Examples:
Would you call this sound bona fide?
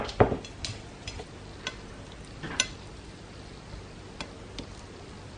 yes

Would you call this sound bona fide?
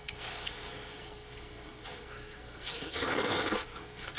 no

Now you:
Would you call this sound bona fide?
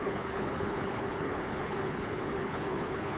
no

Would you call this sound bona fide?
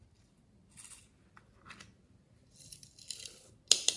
yes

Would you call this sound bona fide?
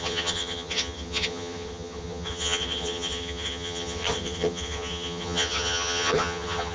no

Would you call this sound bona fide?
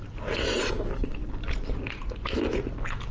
yes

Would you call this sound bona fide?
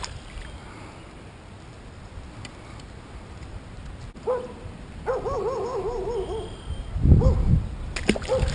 yes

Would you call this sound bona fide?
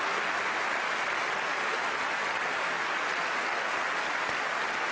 yes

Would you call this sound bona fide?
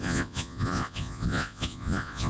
no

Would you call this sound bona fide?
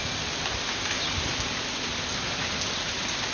yes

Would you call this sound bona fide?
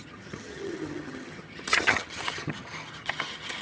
no